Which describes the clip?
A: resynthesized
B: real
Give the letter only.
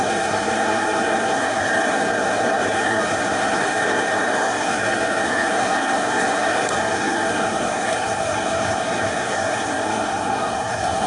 A